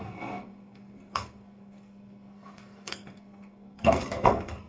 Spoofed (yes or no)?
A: yes